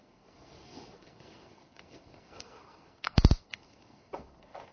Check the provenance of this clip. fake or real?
fake